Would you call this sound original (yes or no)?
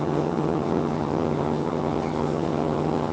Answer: no